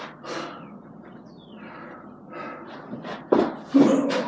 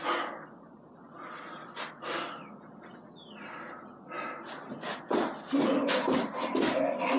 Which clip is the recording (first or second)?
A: second